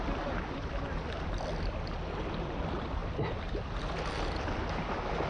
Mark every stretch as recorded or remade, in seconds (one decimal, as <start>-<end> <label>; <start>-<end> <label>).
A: 0.0-3.0 recorded; 3.0-3.8 remade; 3.8-5.3 recorded